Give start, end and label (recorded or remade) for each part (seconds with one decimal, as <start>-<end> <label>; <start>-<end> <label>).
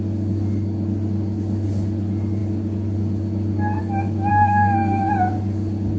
0.0-4.3 recorded; 4.3-5.1 remade; 5.1-6.0 recorded